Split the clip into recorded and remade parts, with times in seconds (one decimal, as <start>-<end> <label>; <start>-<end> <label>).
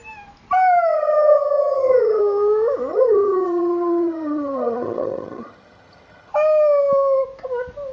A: 0.0-0.9 recorded; 0.9-2.2 remade; 2.2-2.9 recorded; 2.9-6.3 remade; 6.3-7.9 recorded